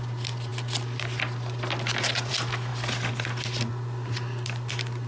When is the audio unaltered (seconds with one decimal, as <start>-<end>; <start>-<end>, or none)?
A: 0.0-5.1